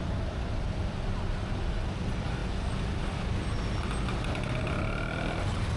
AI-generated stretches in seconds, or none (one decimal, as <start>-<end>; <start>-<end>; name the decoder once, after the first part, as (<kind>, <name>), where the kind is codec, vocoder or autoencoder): 0.0-2.4 (vocoder, BigVGAN v2); 4.8-5.8